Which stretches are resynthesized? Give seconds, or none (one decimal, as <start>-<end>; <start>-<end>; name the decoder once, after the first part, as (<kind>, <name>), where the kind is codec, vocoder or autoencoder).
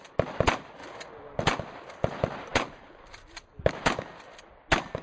none